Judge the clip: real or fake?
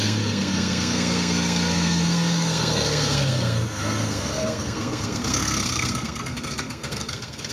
fake